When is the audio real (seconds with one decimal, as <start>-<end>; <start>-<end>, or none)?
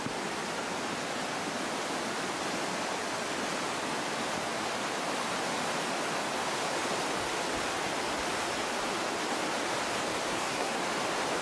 0.0-10.3; 10.8-11.4